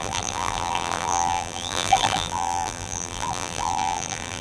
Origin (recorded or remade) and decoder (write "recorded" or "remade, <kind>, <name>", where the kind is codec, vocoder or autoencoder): remade, vocoder, BigVGAN v2